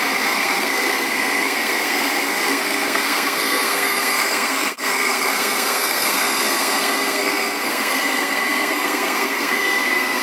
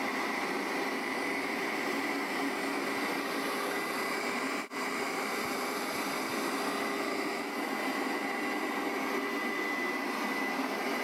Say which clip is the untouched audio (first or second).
second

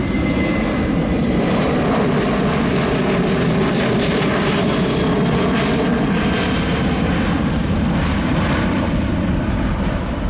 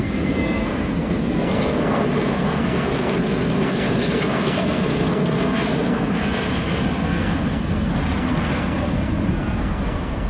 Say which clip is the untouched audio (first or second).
first